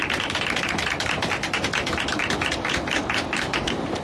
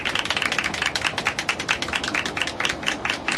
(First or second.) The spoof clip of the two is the first